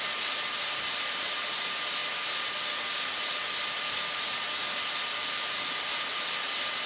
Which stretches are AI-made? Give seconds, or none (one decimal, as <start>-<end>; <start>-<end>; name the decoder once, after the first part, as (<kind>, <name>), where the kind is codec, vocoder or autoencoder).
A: none